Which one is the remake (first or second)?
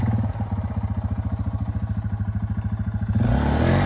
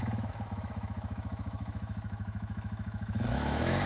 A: second